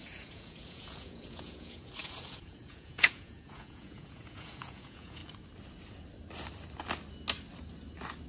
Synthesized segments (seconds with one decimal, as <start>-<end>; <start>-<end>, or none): 0.0-5.2